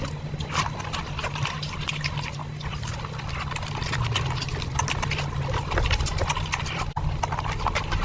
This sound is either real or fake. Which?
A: real